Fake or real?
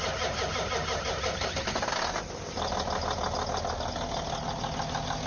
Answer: real